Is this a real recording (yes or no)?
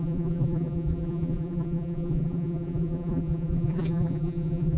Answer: no